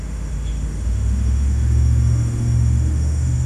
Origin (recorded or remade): remade